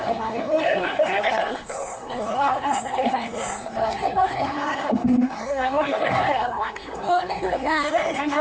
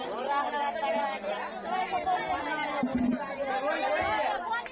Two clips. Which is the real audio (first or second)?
second